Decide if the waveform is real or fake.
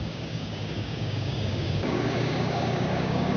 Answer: fake